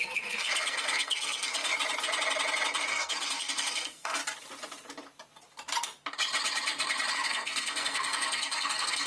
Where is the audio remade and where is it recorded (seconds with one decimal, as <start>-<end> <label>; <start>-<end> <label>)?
0.0-1.7 remade; 1.7-2.8 recorded; 2.8-4.2 remade; 4.2-7.1 recorded; 7.1-9.1 remade